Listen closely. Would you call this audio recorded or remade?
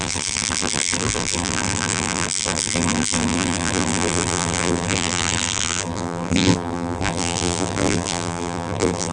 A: remade